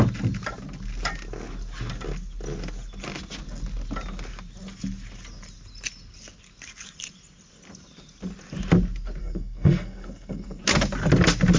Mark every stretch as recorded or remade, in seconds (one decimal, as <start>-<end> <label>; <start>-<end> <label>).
0.0-9.2 recorded; 9.2-10.6 remade; 10.6-11.6 recorded